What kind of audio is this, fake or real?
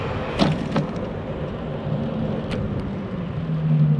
real